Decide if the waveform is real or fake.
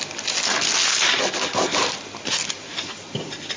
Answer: real